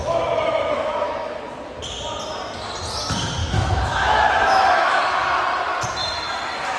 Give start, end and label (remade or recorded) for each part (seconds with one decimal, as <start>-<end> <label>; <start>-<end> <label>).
0.0-1.4 remade; 1.4-3.4 recorded; 3.4-5.0 remade; 5.0-6.8 recorded